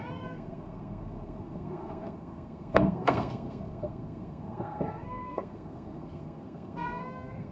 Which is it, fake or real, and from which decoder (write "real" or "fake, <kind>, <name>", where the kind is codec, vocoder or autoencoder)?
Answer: fake, codec, SNAC